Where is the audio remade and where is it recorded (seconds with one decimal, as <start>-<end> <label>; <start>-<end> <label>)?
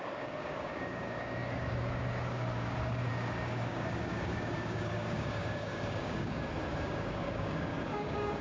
0.0-8.4 remade